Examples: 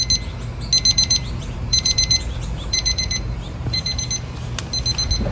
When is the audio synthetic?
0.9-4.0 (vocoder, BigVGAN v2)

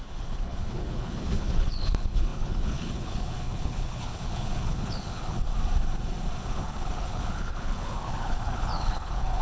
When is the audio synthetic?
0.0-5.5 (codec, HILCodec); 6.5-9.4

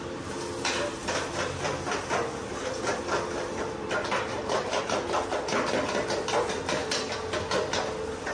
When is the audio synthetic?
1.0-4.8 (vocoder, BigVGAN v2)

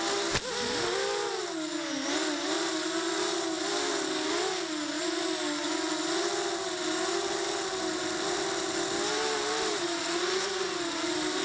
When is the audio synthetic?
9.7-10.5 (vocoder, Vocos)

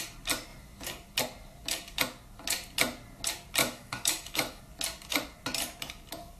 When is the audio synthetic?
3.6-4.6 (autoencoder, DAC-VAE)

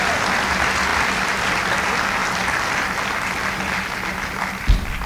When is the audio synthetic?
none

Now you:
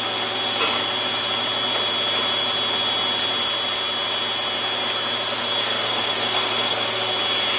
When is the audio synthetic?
5.6-7.1 (codec, SNAC)

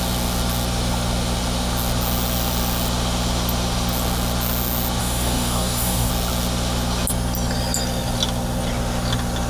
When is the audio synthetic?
5.0-6.1 (codec, DAC)